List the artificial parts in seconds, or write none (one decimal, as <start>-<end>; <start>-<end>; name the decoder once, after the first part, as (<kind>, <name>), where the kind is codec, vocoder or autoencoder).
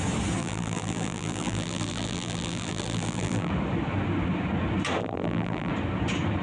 0.4-3.5 (vocoder, BigVGAN v2); 5.0-5.7